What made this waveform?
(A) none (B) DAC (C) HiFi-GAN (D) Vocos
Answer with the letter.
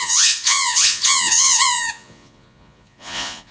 D